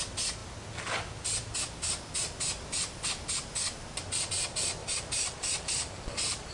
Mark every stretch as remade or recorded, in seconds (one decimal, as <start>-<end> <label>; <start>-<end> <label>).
0.0-4.8 recorded; 4.8-6.5 remade